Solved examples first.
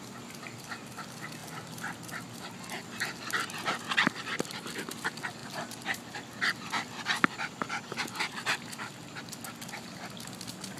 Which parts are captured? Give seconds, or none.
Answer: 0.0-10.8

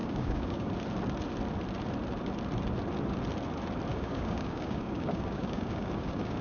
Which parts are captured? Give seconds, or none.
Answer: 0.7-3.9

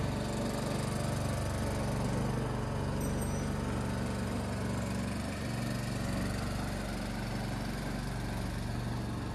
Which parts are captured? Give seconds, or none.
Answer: 0.0-9.3

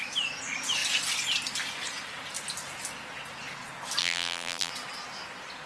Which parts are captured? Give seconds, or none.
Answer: 0.0-4.0; 4.7-5.7

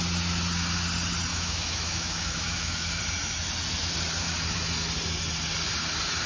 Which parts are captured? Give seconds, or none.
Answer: 0.0-1.3; 3.0-6.3